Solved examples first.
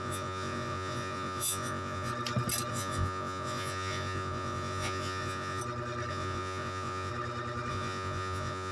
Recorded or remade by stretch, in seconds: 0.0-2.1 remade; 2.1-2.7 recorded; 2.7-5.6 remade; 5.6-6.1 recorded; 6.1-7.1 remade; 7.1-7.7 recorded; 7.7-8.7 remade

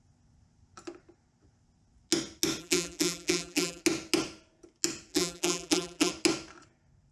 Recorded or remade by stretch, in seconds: 0.0-2.6 recorded; 2.6-3.8 remade; 3.8-5.1 recorded; 5.1-6.1 remade; 6.1-7.1 recorded

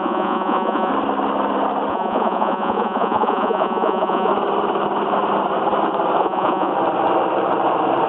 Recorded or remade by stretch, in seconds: 0.0-0.9 remade; 0.9-1.9 recorded; 1.9-4.3 remade; 4.3-6.2 recorded; 6.2-6.7 remade; 6.7-8.1 recorded

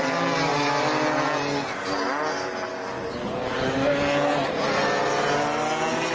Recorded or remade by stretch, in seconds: 0.0-6.1 recorded

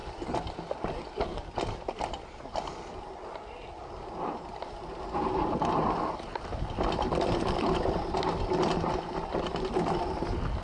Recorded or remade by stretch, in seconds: 0.0-10.6 recorded

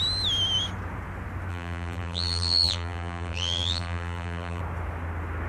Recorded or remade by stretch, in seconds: 0.0-1.5 recorded; 1.5-4.6 remade; 4.6-5.5 recorded

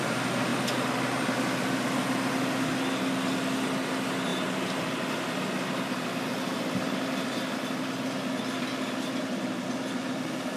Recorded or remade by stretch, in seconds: 0.0-10.6 recorded